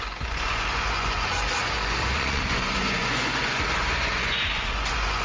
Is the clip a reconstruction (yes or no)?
yes